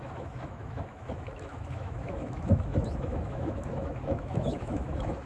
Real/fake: fake